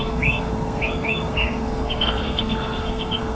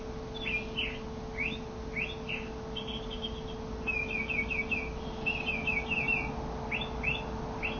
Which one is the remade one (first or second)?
first